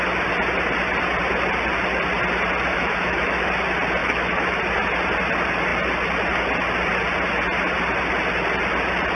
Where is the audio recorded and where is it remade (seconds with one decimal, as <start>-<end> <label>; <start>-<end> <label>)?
0.0-2.7 recorded; 2.7-3.5 remade; 3.5-4.0 recorded; 4.0-4.6 remade; 4.6-9.2 recorded

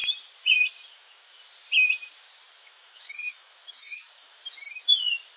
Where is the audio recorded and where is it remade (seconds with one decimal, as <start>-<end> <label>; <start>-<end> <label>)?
0.0-0.9 recorded; 0.9-1.3 remade; 1.3-2.6 recorded; 2.6-4.4 remade; 4.4-5.4 recorded

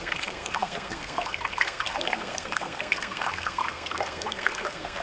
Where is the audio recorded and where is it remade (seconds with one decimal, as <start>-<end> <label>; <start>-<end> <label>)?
0.0-5.0 remade